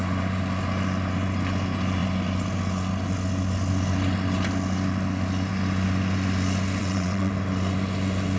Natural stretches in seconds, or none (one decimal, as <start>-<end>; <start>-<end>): 0.0-6.8; 7.3-8.4